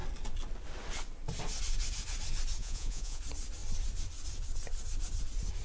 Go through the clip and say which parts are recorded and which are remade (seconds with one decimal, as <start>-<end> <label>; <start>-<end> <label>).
0.0-2.6 recorded; 2.6-3.2 remade; 3.2-5.6 recorded